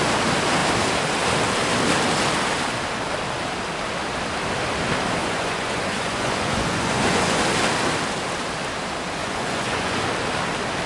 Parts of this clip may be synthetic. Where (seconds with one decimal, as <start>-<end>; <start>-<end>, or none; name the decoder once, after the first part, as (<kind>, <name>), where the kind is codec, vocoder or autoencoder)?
5.2-7.4 (vocoder, Vocos); 9.2-10.0